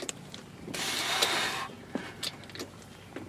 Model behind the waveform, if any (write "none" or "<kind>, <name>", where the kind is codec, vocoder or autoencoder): none